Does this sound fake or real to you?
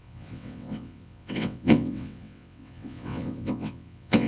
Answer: fake